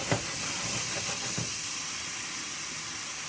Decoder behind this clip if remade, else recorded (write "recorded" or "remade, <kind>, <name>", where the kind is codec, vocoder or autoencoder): recorded